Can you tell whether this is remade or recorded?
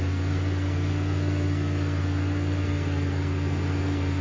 remade